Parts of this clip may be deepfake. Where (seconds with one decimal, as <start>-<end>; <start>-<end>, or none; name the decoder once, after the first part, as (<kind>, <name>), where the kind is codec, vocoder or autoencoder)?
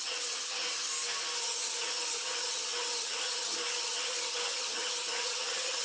0.0-0.9 (vocoder, HiFi-GAN); 1.4-5.8